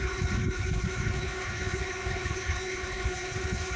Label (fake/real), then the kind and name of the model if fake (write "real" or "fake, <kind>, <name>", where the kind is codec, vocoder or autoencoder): fake, codec, HILCodec